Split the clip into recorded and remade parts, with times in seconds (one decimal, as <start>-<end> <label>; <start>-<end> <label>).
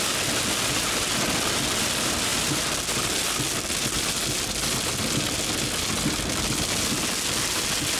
0.0-8.0 recorded